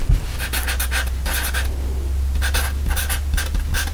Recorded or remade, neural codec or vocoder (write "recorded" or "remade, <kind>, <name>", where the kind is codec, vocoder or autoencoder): recorded